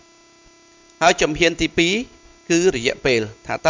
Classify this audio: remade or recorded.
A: recorded